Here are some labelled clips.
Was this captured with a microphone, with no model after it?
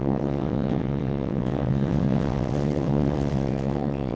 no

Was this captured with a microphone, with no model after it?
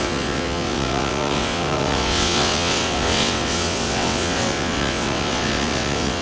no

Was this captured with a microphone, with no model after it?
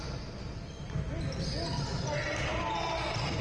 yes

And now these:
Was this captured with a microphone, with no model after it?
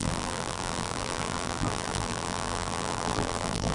no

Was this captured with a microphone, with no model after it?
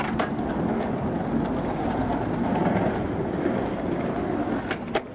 yes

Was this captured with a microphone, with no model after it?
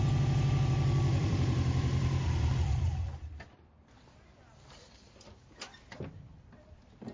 no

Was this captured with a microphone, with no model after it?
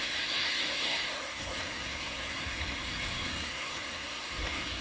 no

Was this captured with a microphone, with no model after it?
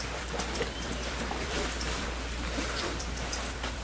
no